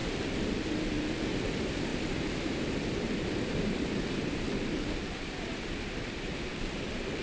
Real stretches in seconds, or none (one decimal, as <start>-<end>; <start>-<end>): 0.0-1.4; 6.5-7.2